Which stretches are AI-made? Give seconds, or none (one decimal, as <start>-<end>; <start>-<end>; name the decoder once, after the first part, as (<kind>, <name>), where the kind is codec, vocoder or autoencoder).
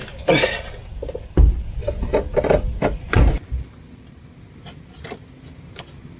none